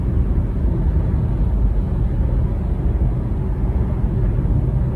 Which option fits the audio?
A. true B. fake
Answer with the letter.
A